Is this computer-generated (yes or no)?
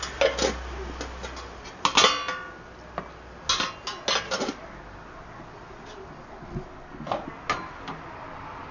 no